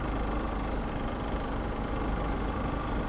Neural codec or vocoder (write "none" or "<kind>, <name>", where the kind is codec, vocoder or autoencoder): none